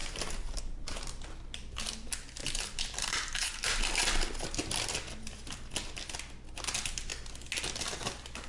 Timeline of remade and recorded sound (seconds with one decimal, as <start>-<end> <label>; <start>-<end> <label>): 0.0-0.6 remade; 0.6-2.4 recorded; 2.4-3.8 remade; 3.8-8.5 recorded